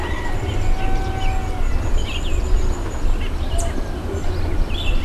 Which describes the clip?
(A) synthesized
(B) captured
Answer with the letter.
B